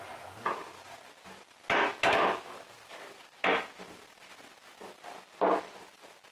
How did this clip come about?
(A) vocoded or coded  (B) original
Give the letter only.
B